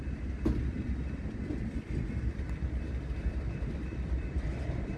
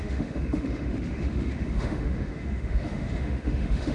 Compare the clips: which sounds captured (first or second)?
first